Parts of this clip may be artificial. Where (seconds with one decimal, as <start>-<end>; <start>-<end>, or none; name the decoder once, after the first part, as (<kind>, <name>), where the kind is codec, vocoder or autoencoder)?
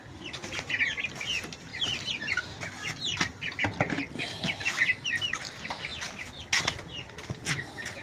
none